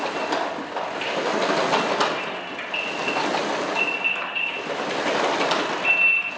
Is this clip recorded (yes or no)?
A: yes